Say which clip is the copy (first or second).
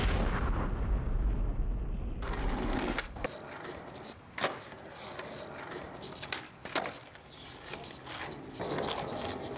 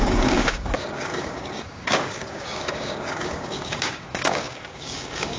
second